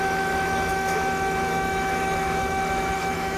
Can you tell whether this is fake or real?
fake